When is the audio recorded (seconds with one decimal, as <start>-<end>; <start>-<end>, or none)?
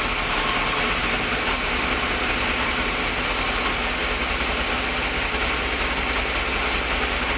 0.0-7.4